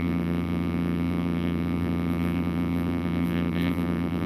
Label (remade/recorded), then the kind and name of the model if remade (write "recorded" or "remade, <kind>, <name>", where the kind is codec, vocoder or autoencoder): remade, vocoder, BigVGAN v2